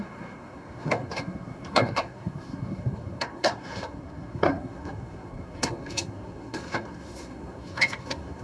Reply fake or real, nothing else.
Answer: fake